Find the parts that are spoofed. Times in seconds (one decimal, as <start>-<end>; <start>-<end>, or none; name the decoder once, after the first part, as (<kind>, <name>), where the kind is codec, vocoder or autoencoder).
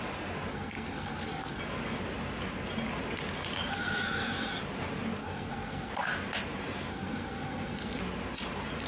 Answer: 0.5-1.6 (codec, SNAC); 3.7-4.6; 5.2-5.9; 6.9-8.0